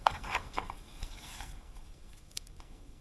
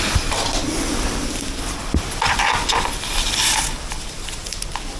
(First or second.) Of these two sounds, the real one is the second